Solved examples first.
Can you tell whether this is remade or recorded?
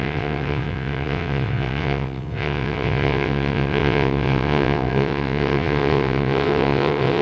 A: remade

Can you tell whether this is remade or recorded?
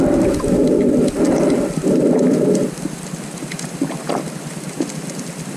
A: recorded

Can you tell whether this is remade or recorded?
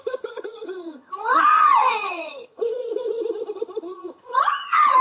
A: remade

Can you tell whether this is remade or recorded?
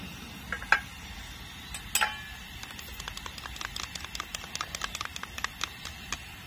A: recorded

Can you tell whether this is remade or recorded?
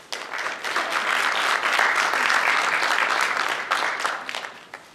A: recorded